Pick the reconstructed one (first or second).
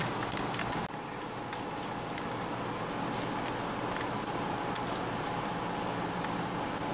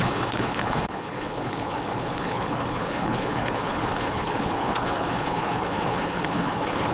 second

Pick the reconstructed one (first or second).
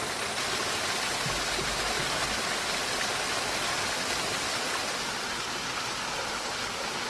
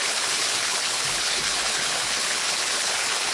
second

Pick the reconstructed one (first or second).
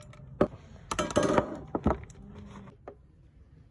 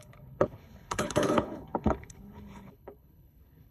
second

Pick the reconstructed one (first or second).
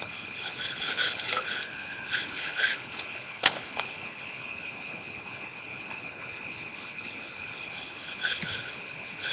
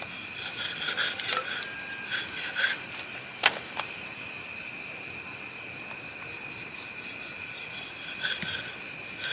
first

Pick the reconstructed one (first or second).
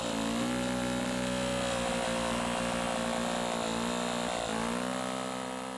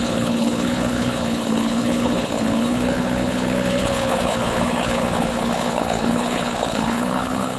second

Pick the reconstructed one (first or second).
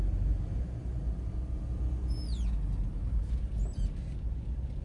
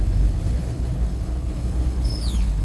second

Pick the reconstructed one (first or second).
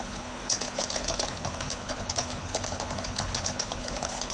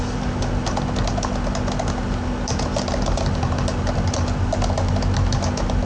first